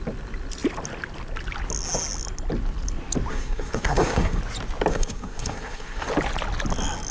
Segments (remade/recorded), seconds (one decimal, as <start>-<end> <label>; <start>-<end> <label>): 0.0-3.3 recorded; 3.3-4.4 remade; 4.4-4.9 recorded; 4.9-6.1 remade; 6.1-7.1 recorded